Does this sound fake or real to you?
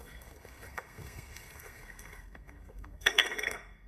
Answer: fake